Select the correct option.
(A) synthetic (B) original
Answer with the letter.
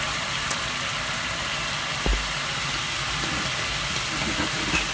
B